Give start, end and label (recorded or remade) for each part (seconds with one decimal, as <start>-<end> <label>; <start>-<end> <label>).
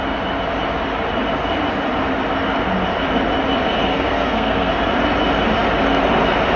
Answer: 0.0-3.9 recorded; 3.9-4.7 remade; 4.7-6.6 recorded